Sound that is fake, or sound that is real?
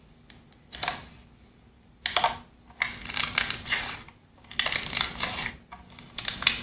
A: real